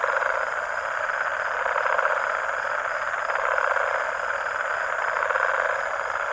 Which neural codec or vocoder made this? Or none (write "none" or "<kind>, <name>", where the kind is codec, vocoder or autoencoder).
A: none